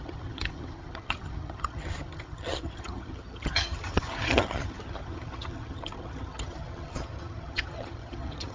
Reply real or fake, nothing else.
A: fake